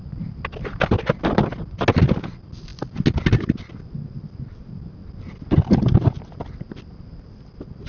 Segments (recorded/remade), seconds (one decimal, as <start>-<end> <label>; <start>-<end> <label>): 0.0-7.9 recorded